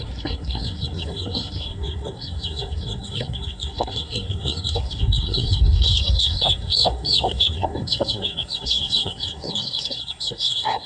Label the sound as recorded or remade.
remade